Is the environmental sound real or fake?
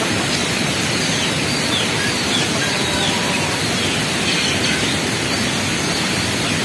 real